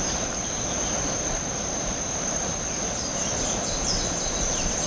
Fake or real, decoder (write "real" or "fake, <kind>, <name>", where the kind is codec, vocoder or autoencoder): fake, vocoder, BigVGAN v2